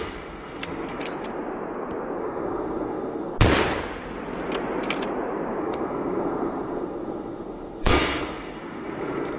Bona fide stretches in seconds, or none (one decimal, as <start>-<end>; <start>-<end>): 1.0-2.2; 3.3-5.6